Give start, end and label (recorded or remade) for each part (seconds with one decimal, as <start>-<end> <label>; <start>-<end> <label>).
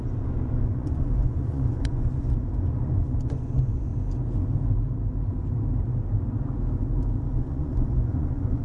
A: 0.0-3.9 remade; 3.9-7.3 recorded; 7.3-8.6 remade